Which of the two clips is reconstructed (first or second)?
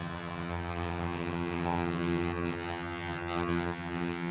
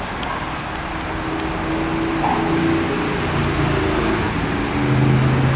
first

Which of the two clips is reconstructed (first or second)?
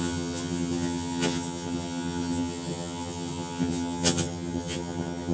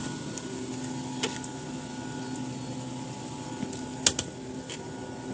first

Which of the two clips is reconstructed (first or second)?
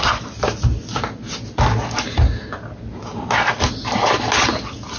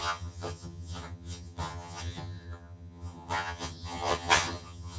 second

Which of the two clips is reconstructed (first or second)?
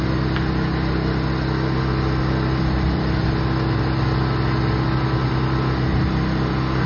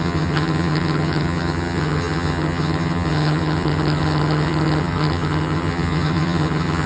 second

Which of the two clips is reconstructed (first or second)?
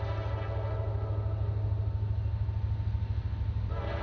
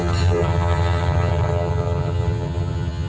second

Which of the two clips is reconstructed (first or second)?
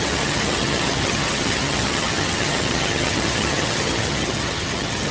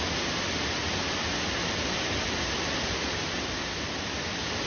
first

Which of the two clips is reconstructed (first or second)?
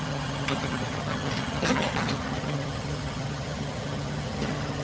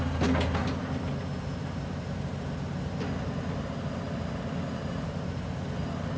first